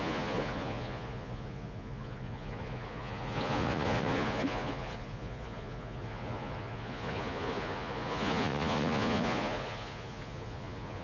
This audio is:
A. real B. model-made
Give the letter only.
B